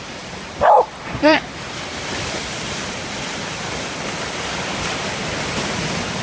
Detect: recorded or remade remade